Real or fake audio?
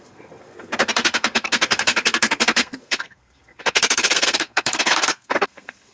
fake